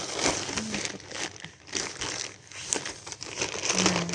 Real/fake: real